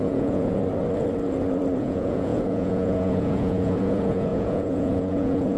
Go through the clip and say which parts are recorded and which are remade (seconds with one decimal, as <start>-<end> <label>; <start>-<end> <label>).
0.0-0.6 remade; 0.6-1.8 recorded; 1.8-5.6 remade